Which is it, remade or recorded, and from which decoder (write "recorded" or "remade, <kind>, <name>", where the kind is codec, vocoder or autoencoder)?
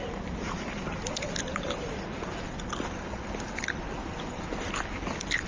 recorded